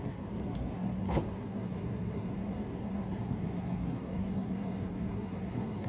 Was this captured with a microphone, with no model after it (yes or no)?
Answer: no